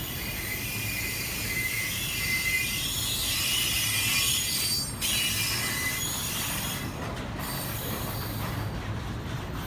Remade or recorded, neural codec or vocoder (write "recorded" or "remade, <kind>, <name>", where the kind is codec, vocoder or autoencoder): recorded